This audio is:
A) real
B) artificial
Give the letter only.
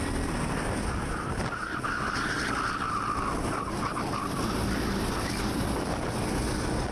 A